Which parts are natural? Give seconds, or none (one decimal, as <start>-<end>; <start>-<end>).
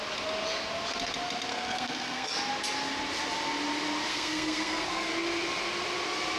0.0-1.5; 2.3-4.1; 5.1-6.4